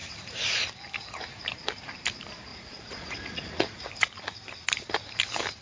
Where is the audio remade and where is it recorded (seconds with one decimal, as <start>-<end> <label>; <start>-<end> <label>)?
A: 0.0-2.5 recorded; 2.5-3.9 remade; 3.9-5.6 recorded